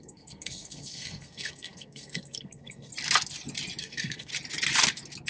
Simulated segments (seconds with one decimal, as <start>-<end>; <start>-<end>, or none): 0.0-2.9; 3.8-4.3